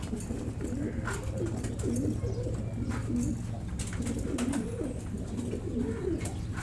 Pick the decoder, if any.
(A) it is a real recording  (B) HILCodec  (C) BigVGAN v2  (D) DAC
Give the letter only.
A